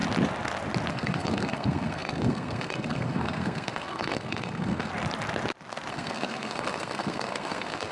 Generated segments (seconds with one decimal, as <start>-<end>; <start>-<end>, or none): 0.9-4.9; 5.9-7.9